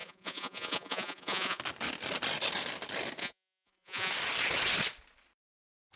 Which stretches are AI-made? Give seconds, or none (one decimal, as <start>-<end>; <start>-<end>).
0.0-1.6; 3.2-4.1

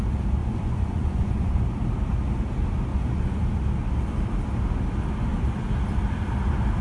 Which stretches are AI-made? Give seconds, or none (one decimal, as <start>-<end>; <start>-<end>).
0.4-1.6; 2.9-3.4

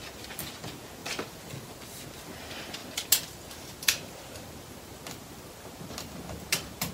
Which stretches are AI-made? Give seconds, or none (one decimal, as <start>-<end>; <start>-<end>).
none